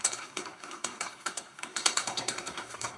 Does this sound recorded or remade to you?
remade